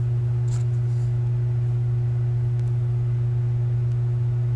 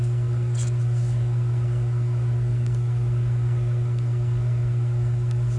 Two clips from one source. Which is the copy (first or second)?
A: second